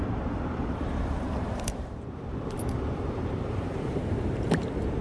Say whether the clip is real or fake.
fake